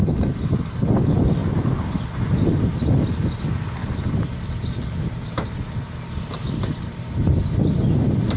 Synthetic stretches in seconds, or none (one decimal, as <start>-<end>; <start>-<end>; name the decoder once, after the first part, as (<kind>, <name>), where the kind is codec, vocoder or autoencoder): 1.4-2.7 (vocoder, BigVGAN v2); 3.8-7.5